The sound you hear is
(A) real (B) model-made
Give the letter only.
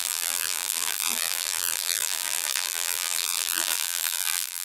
B